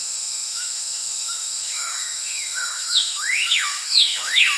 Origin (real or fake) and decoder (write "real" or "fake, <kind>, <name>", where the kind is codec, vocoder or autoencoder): fake, autoencoder, DAC-VAE